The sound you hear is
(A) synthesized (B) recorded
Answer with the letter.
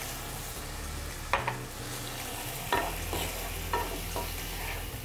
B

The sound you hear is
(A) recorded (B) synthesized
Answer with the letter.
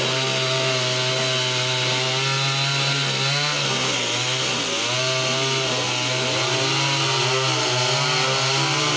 A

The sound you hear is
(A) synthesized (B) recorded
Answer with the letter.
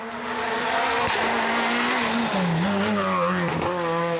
B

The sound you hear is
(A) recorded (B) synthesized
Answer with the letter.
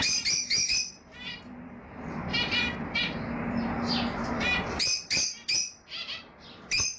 B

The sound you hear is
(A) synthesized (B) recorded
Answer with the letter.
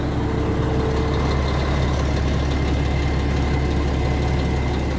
B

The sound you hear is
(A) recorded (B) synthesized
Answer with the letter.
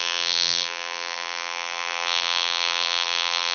B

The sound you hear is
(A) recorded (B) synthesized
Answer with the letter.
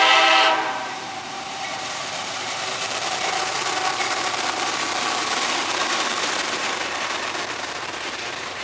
B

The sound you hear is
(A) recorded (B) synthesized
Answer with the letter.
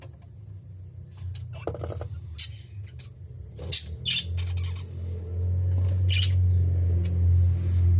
A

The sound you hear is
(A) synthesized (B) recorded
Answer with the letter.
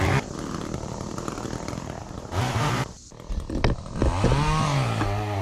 B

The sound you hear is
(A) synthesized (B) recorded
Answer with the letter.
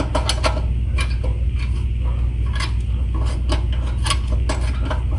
B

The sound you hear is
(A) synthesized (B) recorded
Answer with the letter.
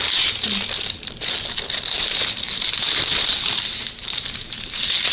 A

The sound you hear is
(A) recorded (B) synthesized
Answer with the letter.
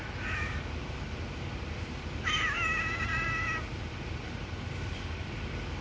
B